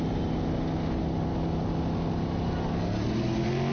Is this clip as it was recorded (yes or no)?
yes